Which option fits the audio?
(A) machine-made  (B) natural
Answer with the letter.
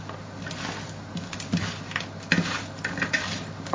B